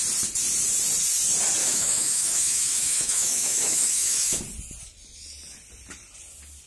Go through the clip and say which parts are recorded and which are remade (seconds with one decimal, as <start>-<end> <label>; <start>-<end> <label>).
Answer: 0.0-1.6 recorded; 1.6-4.4 remade; 4.4-6.7 recorded